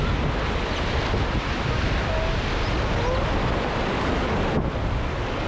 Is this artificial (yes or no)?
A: no